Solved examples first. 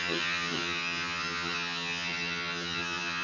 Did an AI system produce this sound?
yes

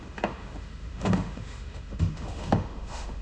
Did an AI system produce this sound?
yes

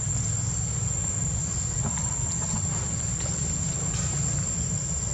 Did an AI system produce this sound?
no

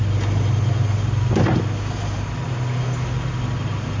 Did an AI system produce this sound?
no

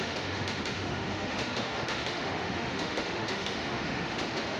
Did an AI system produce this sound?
yes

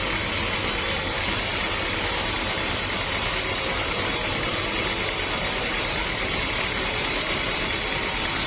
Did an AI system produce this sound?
no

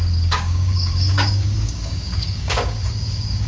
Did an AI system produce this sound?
yes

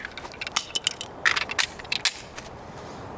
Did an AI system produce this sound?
no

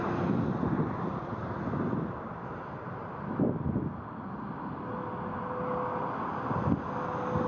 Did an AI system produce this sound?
no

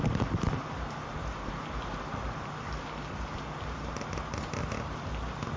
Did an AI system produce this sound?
no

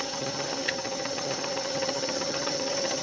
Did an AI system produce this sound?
yes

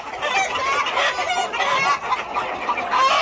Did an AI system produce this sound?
no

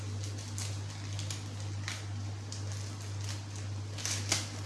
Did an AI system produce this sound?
no